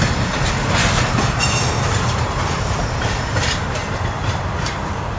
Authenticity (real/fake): fake